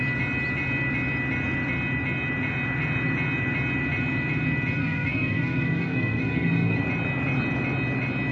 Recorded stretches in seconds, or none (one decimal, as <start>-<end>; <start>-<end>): 0.0-4.8; 6.8-8.3